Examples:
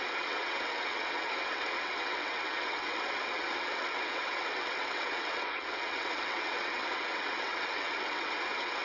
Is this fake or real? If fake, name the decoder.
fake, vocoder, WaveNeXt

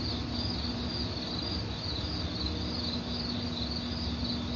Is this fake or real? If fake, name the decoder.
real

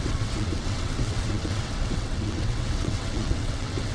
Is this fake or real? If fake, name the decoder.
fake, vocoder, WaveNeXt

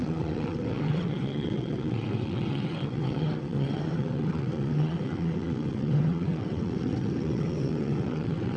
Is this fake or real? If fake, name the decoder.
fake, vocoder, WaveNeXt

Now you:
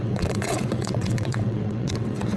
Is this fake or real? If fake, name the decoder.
fake, vocoder, WaveNeXt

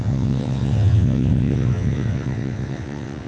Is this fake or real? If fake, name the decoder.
fake, vocoder, WaveNeXt